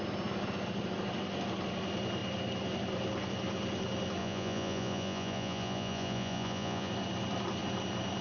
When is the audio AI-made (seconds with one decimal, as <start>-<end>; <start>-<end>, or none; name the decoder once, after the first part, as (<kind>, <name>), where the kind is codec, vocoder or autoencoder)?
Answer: 4.2-6.9 (vocoder, Vocos)